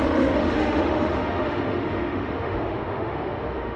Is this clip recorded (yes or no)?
no